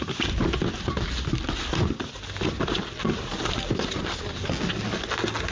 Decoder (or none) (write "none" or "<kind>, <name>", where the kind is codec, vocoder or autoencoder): none